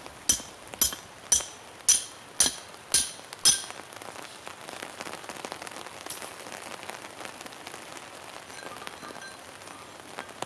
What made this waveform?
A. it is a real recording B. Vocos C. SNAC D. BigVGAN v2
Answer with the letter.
A